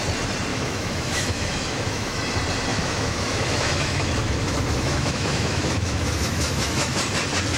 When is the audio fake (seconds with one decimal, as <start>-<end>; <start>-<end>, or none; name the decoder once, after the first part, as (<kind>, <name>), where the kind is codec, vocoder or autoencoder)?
0.5-2.2 (autoencoder, DAC-VAE); 2.7-7.0